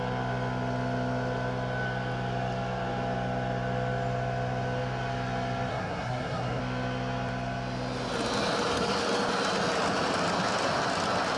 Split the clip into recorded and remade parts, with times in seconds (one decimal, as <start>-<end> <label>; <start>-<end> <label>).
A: 0.0-5.7 recorded; 5.7-6.6 remade; 6.6-11.4 recorded